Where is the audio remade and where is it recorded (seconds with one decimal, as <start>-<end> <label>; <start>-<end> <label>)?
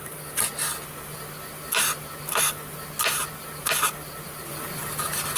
0.0-5.4 recorded